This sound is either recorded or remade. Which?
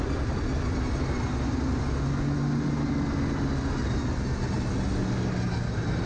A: recorded